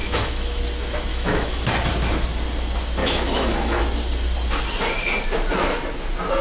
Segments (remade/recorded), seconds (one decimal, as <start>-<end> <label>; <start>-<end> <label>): 0.0-0.6 remade; 0.6-1.1 recorded; 1.1-1.7 remade; 1.7-3.0 recorded; 3.0-3.8 remade; 3.8-6.4 recorded